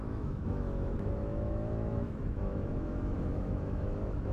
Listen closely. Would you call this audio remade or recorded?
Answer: remade